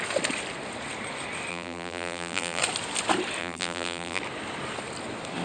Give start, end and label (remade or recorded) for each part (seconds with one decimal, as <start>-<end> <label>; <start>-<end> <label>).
0.0-1.5 recorded; 1.5-2.6 remade; 2.6-3.4 recorded; 3.4-4.2 remade; 4.2-5.4 recorded